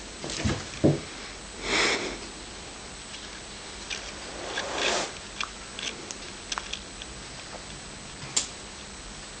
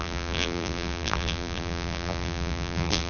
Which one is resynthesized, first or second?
second